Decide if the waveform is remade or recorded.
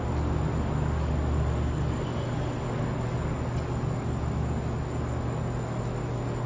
recorded